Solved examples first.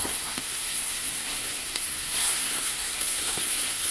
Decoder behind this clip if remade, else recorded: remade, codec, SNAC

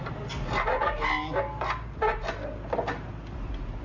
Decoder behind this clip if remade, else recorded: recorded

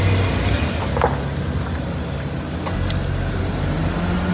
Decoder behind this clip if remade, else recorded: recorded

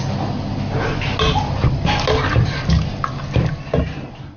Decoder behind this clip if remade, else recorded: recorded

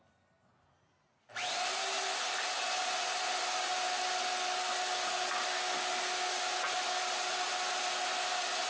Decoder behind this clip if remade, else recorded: recorded